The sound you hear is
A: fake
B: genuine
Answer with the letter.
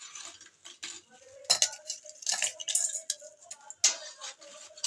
B